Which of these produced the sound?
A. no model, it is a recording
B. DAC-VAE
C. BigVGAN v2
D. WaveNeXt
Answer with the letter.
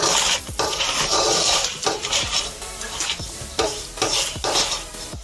C